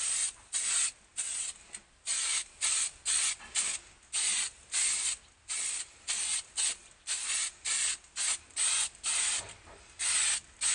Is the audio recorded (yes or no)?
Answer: yes